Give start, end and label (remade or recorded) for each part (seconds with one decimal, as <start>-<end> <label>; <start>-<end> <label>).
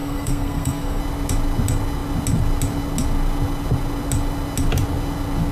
0.0-1.0 remade; 1.0-5.5 recorded